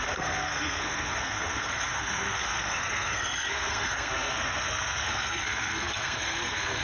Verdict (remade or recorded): remade